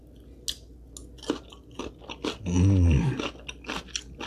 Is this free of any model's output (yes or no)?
yes